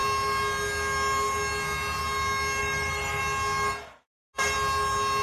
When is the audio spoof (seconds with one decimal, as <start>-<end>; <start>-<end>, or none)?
2.6-3.2